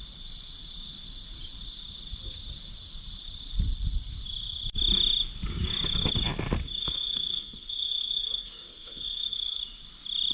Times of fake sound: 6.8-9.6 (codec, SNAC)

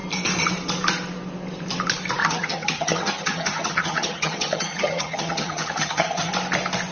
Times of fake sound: 2.2-6.3 (vocoder, HiFi-GAN)

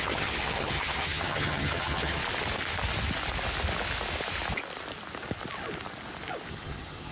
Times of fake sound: 0.0-2.2 (vocoder, HiFi-GAN); 6.5-7.1

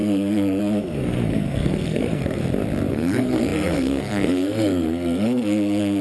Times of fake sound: 0.0-2.4 (codec, SNAC); 2.9-6.0